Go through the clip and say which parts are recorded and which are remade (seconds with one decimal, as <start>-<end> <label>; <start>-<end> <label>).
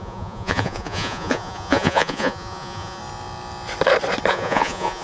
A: 0.0-3.0 remade; 3.0-4.3 recorded; 4.3-5.0 remade